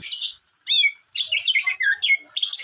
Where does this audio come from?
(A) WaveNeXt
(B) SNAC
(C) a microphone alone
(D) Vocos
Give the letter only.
C